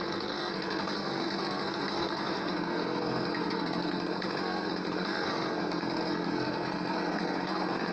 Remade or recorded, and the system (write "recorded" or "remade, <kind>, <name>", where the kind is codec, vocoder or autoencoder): remade, codec, SNAC